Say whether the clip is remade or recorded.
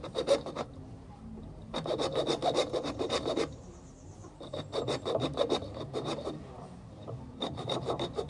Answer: remade